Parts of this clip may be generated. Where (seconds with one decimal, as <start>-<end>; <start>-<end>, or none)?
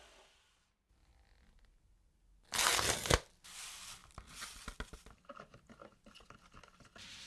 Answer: none